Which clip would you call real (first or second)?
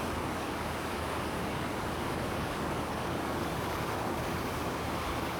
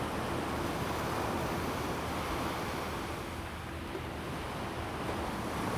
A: second